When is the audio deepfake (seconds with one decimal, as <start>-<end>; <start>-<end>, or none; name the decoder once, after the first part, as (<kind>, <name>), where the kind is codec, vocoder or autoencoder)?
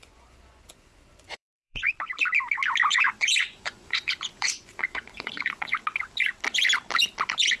0.0-1.9 (vocoder, Vocos); 2.9-5.8